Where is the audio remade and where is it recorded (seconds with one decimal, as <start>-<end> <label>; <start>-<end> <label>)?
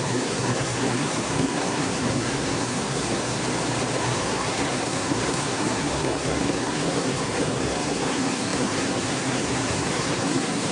0.0-3.4 remade; 3.4-4.0 recorded; 4.0-10.7 remade